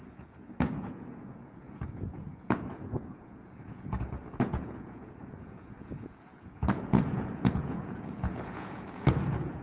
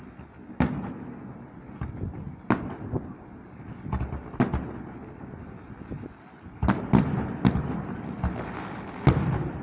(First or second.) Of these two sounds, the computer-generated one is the first